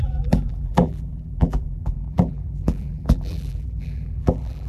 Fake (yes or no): yes